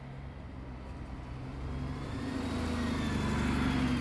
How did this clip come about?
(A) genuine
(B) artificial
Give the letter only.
A